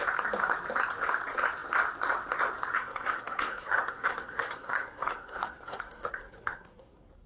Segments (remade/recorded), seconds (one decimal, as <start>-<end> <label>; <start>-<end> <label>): 0.0-2.7 recorded; 2.7-7.3 remade

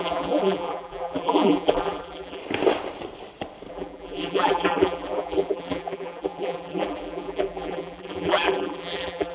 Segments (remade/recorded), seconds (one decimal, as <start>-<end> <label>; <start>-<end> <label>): 0.0-2.4 remade; 2.4-3.7 recorded; 3.7-9.3 remade

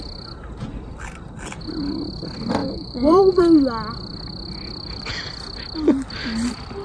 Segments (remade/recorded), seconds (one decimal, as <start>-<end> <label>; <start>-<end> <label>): 0.0-2.6 recorded; 2.6-3.4 remade; 3.4-6.8 recorded

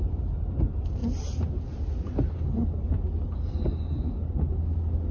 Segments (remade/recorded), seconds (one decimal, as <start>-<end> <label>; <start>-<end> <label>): 0.0-5.1 recorded

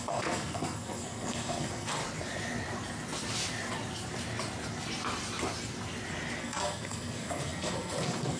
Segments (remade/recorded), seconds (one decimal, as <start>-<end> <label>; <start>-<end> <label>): 0.0-2.0 remade; 2.0-6.4 recorded; 6.4-8.4 remade

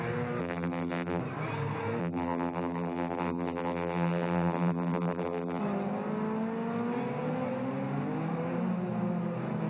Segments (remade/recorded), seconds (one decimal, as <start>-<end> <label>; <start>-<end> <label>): 0.0-0.4 recorded; 0.4-1.2 remade; 1.2-2.0 recorded; 2.0-5.6 remade; 5.6-9.7 recorded